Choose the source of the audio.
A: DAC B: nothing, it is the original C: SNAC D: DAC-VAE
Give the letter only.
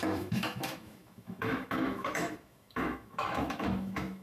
D